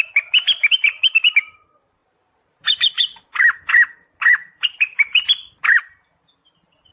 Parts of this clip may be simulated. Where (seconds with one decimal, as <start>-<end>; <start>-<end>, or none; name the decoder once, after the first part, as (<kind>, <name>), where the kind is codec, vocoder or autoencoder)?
0.0-6.9 (vocoder, BigVGAN v2)